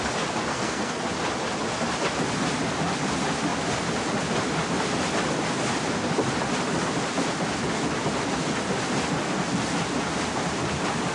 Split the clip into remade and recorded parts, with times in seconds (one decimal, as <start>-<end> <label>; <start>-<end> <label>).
0.0-0.5 recorded; 0.5-1.0 remade; 1.0-11.1 recorded